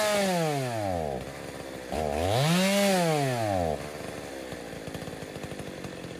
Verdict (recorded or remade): recorded